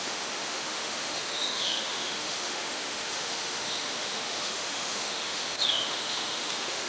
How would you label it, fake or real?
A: fake